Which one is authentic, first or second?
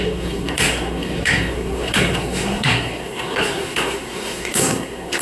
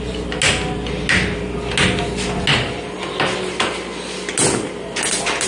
second